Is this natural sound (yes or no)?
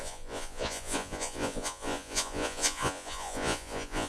no